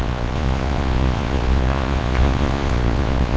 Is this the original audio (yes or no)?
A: no